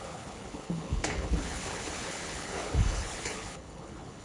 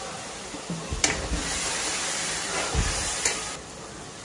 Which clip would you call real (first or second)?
second